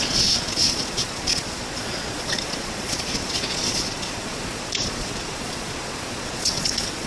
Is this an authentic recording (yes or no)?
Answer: no